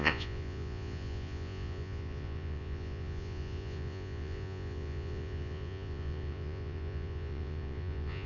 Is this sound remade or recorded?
remade